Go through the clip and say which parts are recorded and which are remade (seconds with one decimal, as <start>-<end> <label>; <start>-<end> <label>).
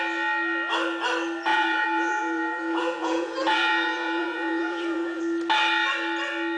0.0-1.5 recorded; 1.5-5.2 remade; 5.2-6.6 recorded